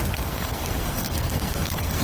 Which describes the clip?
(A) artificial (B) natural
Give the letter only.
A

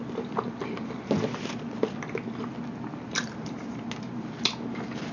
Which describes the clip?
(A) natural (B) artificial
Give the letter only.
A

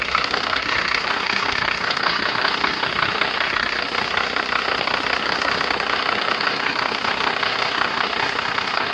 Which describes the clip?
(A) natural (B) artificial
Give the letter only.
B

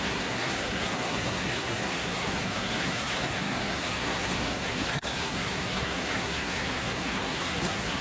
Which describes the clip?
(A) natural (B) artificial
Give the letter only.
B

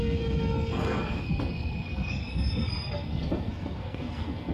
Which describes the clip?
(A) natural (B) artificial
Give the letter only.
B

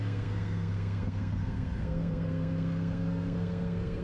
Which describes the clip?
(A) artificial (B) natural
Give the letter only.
A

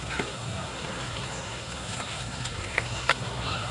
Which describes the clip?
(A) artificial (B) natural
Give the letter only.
A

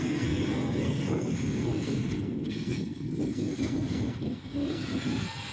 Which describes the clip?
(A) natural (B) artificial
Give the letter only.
B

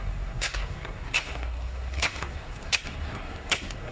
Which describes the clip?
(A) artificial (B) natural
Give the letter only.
A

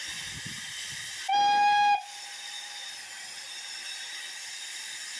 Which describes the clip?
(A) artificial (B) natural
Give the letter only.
B